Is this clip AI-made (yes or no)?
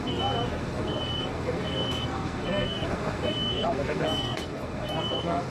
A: yes